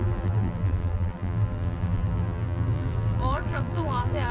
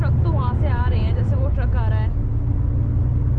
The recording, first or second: second